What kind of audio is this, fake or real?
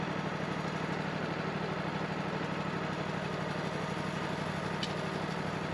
real